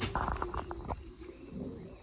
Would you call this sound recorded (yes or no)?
yes